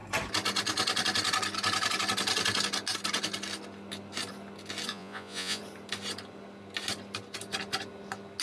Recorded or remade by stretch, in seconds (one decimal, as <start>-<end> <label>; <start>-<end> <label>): 0.0-4.9 recorded; 4.9-5.6 remade; 5.6-8.4 recorded